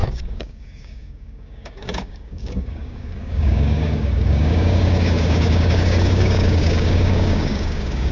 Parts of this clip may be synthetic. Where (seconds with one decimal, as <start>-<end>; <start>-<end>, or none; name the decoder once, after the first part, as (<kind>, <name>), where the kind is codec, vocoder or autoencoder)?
0.0-8.1 (codec, DAC)